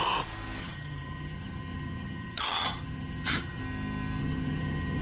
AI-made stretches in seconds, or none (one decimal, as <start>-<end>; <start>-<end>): 0.6-3.6; 4.2-5.0